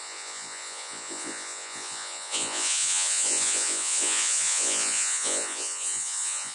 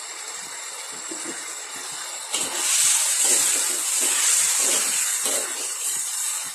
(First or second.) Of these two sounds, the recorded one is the second